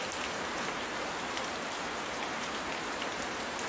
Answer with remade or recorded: remade